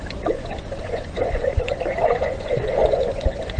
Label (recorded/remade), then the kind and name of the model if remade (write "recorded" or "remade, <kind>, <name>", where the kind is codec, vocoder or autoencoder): remade, vocoder, Vocos